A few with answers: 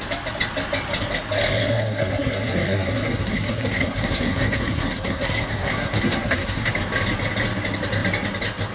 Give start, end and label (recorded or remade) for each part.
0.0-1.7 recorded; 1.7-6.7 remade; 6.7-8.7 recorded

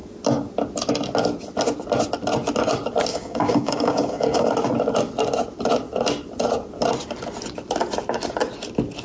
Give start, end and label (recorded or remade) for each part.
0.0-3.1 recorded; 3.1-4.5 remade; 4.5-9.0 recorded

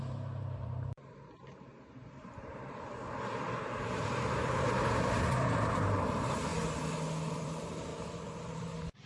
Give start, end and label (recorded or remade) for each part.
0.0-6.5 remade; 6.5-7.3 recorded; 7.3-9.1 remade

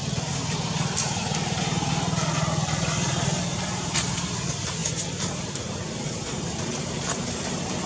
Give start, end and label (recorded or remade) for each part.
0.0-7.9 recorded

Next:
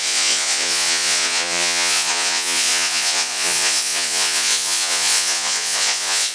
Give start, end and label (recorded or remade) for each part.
0.0-6.3 remade